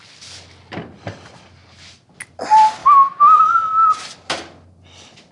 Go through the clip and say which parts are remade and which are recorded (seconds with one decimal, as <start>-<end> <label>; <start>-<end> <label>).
0.0-2.8 recorded; 2.8-3.4 remade; 3.4-5.3 recorded